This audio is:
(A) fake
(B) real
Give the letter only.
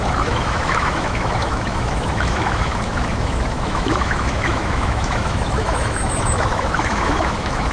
A